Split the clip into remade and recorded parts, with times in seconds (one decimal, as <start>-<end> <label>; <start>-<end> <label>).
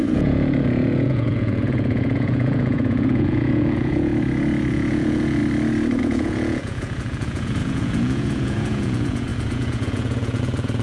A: 0.0-4.1 remade; 4.1-4.7 recorded; 4.7-5.4 remade; 5.4-6.0 recorded; 6.0-10.8 remade